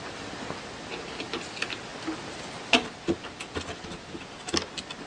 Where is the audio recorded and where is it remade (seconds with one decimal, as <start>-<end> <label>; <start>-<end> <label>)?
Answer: 0.0-1.9 recorded; 1.9-3.9 remade; 3.9-5.1 recorded